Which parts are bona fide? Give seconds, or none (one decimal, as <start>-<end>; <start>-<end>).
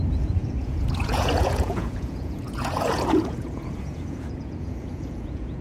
none